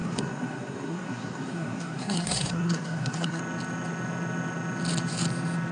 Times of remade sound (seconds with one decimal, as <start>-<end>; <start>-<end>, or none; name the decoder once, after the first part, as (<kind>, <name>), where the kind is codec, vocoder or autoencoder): 0.0-3.4 (codec, SNAC)